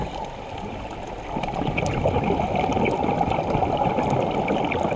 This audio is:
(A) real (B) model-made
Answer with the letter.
A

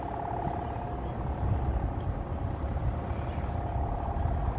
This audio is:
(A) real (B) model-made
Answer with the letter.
A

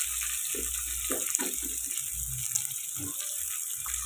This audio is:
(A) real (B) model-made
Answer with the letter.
A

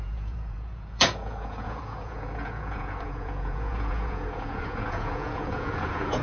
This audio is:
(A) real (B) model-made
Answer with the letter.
B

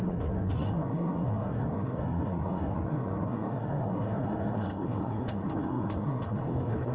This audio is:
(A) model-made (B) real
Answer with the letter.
A